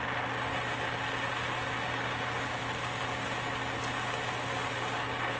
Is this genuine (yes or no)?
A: yes